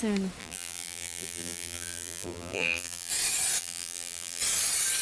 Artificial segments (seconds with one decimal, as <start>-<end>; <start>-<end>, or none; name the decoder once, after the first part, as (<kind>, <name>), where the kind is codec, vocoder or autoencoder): 0.4-3.1 (vocoder, BigVGAN v2); 3.6-4.4